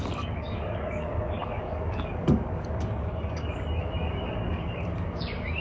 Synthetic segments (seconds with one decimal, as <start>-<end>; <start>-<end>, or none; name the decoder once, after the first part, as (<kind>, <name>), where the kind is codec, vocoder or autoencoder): 0.0-5.6 (codec, DAC)